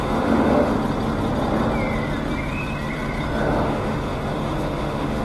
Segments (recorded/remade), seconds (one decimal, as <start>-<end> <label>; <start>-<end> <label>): 0.0-0.7 remade; 0.7-3.4 recorded; 3.4-5.2 remade